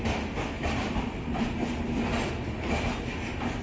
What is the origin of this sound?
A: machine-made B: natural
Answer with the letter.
B